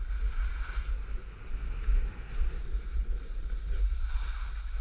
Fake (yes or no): no